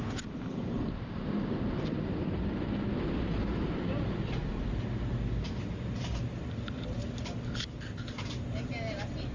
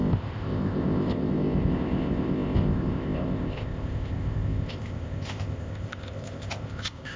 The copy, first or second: second